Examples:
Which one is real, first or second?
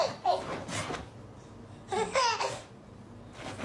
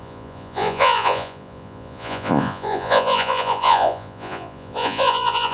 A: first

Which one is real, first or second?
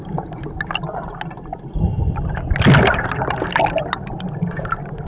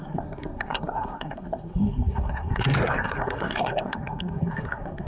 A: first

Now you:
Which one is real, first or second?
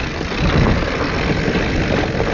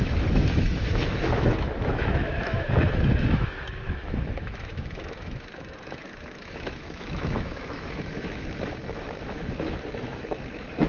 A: first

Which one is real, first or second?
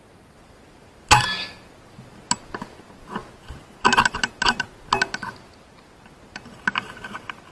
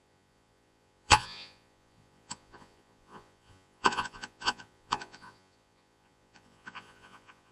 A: first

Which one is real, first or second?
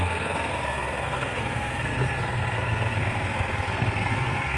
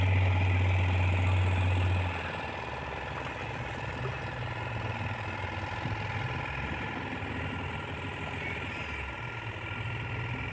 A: second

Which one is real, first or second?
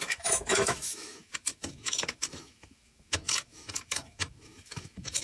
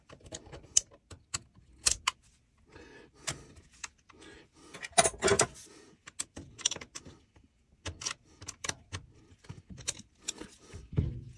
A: second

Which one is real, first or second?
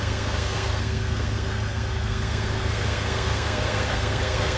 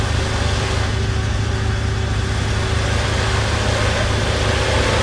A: second